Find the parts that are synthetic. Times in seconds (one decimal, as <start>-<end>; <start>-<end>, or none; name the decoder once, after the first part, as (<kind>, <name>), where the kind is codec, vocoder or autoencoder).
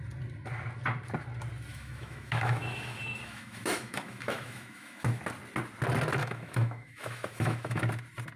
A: 1.7-5.2 (autoencoder, DAC-VAE); 6.2-7.8